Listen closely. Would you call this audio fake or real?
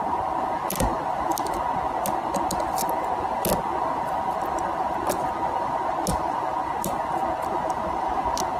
real